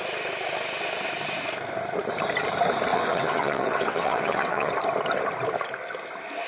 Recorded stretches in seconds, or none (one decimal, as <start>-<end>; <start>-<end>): 0.0-2.9; 4.7-6.5